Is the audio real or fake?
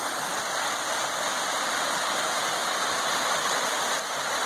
real